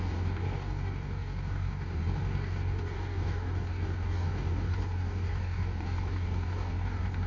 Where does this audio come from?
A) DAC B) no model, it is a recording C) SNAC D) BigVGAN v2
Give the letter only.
A